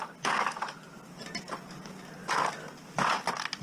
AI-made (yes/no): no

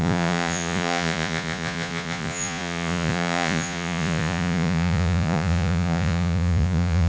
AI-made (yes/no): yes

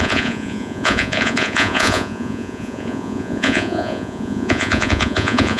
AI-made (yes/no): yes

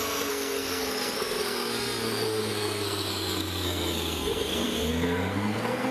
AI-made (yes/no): yes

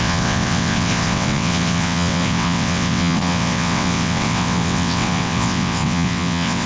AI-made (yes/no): yes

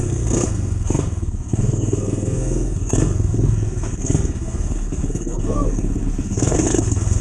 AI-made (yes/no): yes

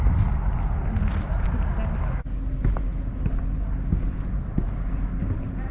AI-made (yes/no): no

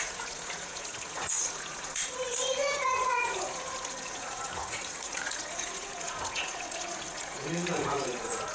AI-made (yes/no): yes